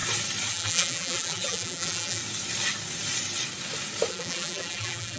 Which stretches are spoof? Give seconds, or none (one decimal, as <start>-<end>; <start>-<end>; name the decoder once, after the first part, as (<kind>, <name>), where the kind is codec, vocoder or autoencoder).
0.5-2.2 (vocoder, BigVGAN v2); 4.1-5.2